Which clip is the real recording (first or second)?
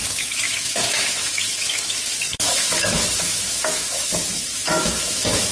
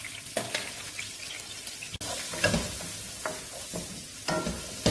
second